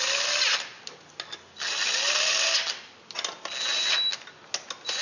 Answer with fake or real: real